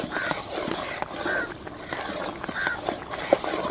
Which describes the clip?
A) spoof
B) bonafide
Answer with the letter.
B